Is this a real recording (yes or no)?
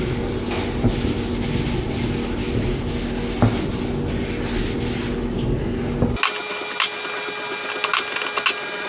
yes